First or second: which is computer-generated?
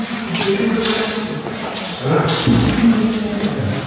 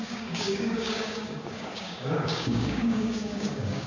second